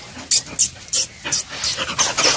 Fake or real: real